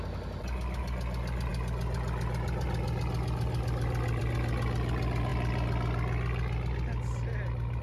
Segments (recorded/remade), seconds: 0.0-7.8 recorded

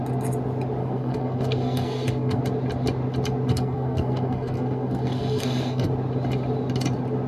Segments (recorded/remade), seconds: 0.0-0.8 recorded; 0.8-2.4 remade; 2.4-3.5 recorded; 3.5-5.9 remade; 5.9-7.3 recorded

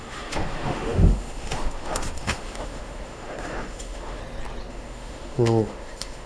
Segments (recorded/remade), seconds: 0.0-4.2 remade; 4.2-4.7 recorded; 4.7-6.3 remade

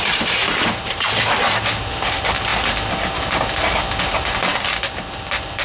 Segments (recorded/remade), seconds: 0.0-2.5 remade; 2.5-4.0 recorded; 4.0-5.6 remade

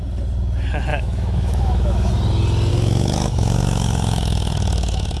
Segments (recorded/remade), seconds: 0.0-0.9 recorded; 0.9-2.1 remade; 2.1-2.7 recorded; 2.7-5.2 remade

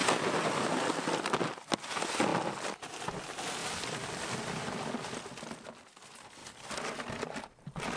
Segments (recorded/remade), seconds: 0.0-3.6 recorded; 3.6-5.2 remade; 5.2-6.4 recorded; 6.4-7.2 remade; 7.2-8.0 recorded